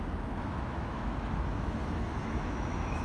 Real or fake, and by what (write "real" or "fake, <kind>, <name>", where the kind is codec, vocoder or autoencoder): fake, autoencoder, DAC-VAE